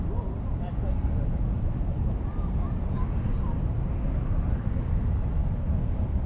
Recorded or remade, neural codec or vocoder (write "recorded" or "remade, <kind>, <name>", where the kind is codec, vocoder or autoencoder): recorded